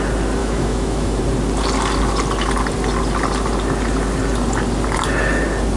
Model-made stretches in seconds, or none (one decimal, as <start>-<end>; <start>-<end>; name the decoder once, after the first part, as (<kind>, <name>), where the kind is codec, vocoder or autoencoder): 0.4-1.2 (autoencoder, DAC-VAE)